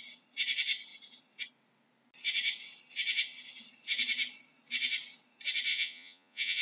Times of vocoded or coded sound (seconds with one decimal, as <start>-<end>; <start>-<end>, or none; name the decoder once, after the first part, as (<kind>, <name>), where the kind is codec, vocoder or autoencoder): 5.7-6.6 (vocoder, Vocos)